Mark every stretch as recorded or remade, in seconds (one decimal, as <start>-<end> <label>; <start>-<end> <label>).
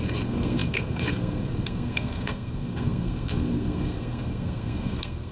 0.0-5.3 remade